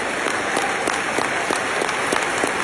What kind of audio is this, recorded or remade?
recorded